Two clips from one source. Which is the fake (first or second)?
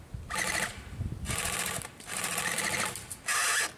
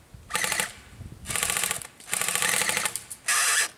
first